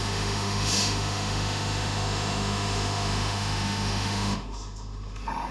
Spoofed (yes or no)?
yes